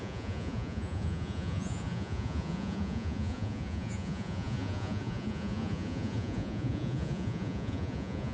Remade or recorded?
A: remade